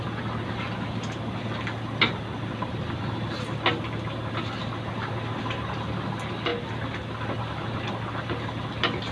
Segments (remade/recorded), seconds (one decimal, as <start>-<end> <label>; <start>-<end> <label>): 0.0-9.1 recorded